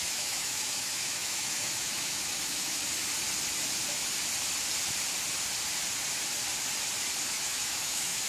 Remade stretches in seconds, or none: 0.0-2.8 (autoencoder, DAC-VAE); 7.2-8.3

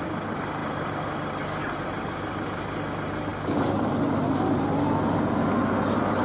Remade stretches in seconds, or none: none